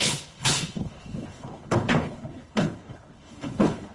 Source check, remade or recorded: remade